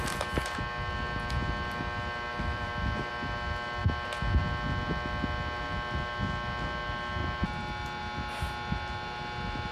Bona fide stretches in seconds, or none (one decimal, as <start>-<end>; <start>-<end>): 0.0-2.3; 3.1-9.7